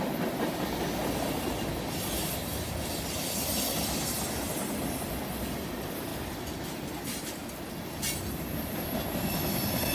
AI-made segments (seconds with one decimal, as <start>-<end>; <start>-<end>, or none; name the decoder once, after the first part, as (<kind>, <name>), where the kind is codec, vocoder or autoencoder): none